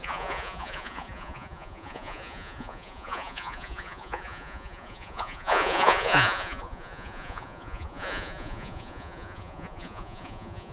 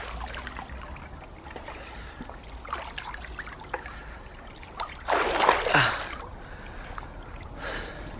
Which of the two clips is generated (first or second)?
first